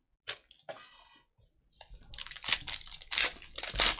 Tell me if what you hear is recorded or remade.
recorded